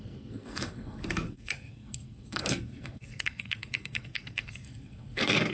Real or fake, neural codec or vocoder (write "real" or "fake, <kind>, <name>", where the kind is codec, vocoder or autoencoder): fake, codec, SNAC